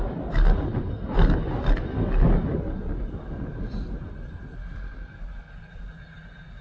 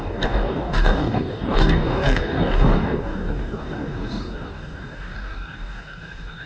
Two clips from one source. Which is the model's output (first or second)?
second